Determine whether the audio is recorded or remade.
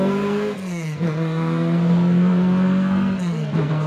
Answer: remade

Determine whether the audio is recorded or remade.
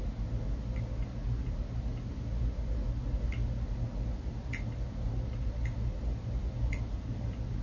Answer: recorded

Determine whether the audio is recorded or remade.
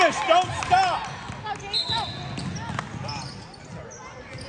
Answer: recorded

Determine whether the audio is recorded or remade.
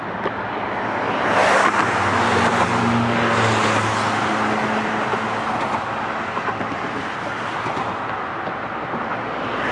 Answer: recorded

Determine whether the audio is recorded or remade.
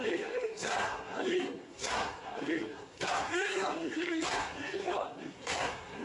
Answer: remade